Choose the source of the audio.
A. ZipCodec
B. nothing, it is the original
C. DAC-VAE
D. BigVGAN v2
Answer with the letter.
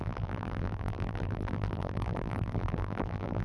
D